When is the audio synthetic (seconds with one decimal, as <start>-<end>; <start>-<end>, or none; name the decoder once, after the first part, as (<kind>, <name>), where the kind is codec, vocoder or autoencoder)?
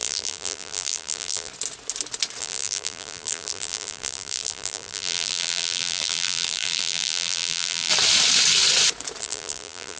0.0-1.5 (vocoder, BigVGAN v2); 2.4-7.9; 9.2-10.0